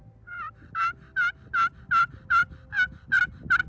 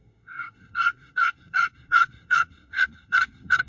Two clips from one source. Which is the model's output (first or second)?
second